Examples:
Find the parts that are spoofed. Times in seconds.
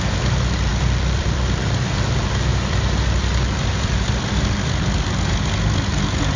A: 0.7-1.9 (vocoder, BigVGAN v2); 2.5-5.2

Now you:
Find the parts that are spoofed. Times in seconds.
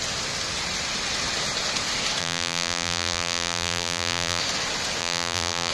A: 2.2-4.4 (vocoder, BigVGAN v2); 5.0-5.7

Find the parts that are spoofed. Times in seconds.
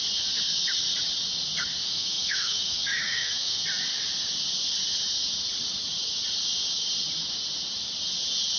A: 1.8-3.6 (autoencoder, DAC-VAE)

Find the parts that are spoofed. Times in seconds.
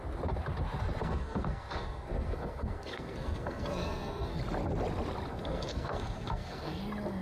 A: 1.0-4.4 (codec, SNAC); 5.3-6.8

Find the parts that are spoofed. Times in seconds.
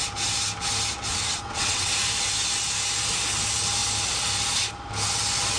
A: 1.1-1.9 (vocoder, WaveNeXt)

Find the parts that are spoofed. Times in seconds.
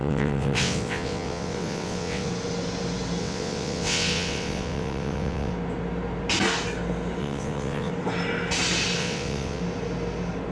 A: 0.0-2.3 (vocoder, WaveNeXt); 3.2-5.5; 7.2-7.9; 9.0-9.6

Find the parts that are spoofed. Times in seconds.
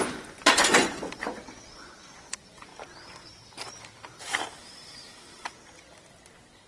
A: 0.0-2.7 (vocoder, Vocos)